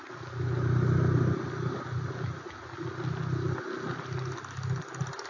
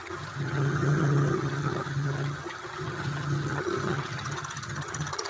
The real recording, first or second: first